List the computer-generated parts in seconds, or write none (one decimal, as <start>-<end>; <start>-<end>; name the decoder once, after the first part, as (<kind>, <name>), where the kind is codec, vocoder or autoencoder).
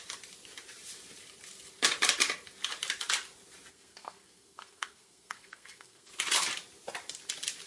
3.7-6.1 (codec, SNAC)